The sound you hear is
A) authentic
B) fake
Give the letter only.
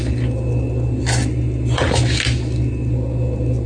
A